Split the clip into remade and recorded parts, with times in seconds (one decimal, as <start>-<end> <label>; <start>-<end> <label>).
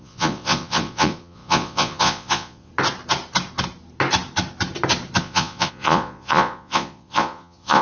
0.0-2.7 remade; 2.7-5.2 recorded; 5.2-7.8 remade